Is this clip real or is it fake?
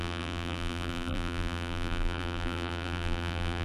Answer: fake